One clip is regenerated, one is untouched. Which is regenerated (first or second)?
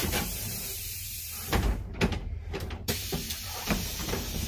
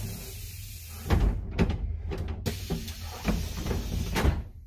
first